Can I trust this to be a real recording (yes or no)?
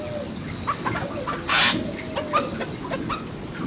yes